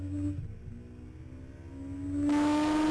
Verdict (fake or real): real